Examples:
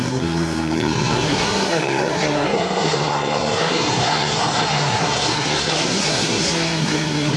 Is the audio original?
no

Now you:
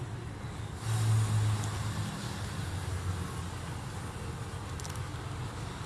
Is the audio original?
yes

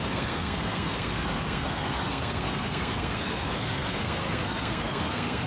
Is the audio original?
no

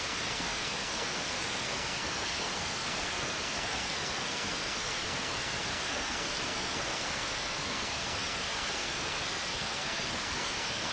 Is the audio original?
no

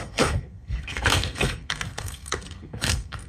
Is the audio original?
no